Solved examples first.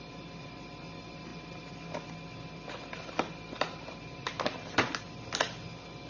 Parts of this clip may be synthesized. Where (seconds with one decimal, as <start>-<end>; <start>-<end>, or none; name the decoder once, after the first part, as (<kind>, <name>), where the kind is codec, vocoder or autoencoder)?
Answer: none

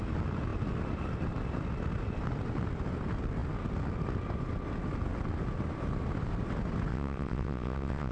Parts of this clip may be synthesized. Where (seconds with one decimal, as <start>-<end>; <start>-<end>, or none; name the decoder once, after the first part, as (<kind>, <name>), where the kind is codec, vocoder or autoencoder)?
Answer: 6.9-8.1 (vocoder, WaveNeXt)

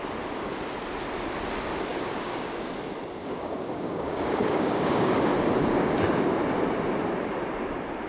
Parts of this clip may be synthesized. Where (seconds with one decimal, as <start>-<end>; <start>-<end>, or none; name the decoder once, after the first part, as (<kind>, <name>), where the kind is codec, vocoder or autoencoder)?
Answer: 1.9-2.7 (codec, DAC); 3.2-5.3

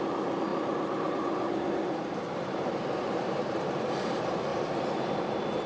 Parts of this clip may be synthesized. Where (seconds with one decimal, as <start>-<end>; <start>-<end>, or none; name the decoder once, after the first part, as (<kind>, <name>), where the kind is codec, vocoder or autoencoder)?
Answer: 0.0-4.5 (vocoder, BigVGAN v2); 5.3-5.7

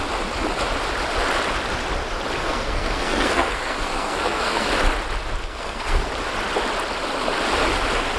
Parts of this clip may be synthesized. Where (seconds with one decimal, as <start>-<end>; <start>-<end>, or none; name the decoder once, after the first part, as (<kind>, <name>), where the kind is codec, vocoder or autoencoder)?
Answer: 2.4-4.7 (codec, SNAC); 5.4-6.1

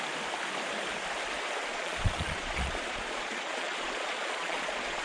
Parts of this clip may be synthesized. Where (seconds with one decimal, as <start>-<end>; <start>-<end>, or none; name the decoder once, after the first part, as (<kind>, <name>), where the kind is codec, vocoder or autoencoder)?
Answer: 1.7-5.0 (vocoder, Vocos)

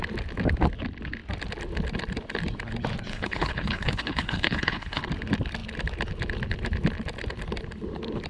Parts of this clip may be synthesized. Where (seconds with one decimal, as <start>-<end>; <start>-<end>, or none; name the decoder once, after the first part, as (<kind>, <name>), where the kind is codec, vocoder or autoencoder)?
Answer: 3.1-5.0 (codec, HILCodec)